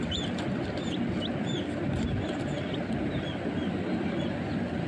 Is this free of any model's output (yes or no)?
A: no